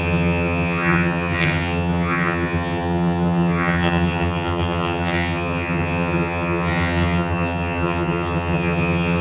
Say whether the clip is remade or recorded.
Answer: remade